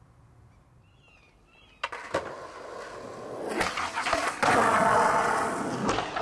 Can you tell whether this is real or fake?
real